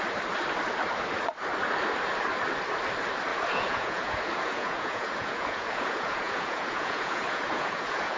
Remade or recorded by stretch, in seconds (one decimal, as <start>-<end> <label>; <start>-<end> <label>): 0.0-3.3 recorded; 3.3-8.2 remade